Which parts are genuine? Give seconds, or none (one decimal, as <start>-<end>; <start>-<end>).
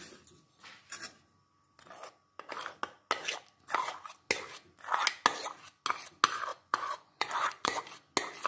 0.0-6.5; 7.8-8.5